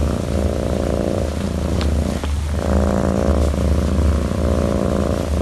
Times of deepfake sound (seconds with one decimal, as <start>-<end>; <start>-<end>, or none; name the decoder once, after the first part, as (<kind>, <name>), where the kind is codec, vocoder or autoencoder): none